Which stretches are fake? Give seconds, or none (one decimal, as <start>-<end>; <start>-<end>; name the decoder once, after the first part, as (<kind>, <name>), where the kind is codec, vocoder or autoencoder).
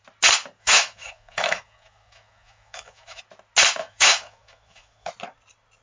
0.6-3.2 (autoencoder, DAC-VAE); 3.8-5.1